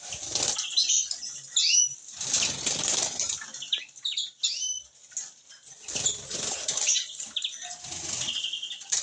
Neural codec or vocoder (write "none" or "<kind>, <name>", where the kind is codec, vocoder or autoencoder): none